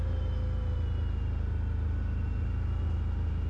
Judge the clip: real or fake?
real